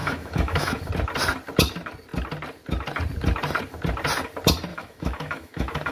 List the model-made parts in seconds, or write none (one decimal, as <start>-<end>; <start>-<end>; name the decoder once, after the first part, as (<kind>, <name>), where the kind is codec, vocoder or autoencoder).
0.0-0.9 (autoencoder, DAC-VAE); 4.7-5.9